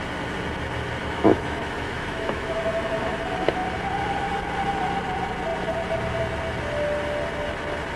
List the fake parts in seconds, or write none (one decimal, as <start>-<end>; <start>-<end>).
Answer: 1.0-2.6